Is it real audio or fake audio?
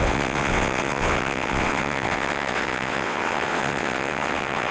fake